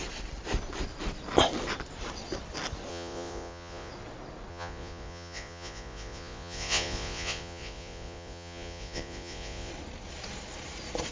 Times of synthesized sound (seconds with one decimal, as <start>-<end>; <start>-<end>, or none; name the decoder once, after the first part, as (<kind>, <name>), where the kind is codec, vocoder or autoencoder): 2.9-3.9 (vocoder, Vocos); 4.5-9.7